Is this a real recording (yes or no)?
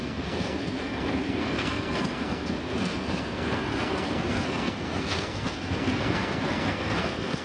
no